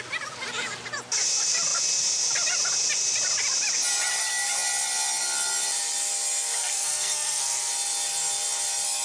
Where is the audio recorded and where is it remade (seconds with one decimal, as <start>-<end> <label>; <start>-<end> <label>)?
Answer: 0.0-6.6 recorded; 6.6-7.7 remade; 7.7-9.0 recorded